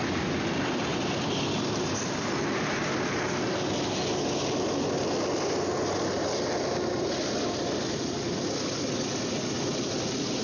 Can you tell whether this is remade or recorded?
recorded